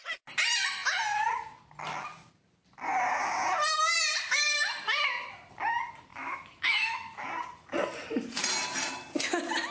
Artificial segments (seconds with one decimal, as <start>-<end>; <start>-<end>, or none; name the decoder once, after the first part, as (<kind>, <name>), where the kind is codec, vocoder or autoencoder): 6.1-7.3 (autoencoder, DAC-VAE)